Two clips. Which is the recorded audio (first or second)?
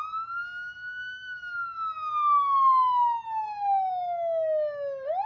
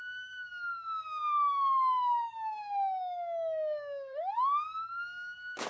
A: first